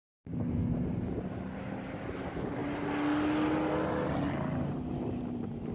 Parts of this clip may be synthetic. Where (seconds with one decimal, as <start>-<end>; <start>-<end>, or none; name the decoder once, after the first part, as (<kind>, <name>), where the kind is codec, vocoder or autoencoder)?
0.0-0.6 (vocoder, BigVGAN v2); 1.4-2.6; 4.6-5.7